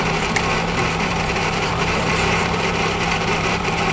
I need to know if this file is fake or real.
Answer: fake